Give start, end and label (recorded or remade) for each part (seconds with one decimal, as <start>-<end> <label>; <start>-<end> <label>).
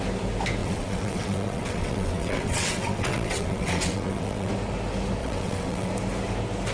0.0-0.6 recorded; 0.6-4.5 remade; 4.5-5.2 recorded; 5.2-5.9 remade; 5.9-6.7 recorded